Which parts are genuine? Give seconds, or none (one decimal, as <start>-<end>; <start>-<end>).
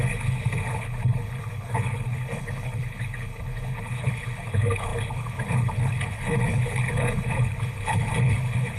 none